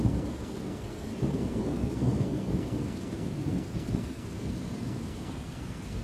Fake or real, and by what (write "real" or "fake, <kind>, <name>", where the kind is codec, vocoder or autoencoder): fake, codec, SNAC